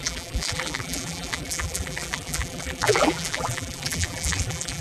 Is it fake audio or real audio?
fake